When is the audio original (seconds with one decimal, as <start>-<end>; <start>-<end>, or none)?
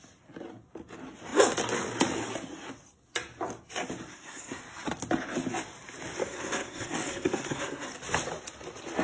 0.0-4.1; 4.6-6.2; 7.9-9.0